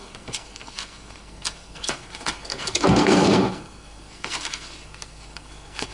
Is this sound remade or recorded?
remade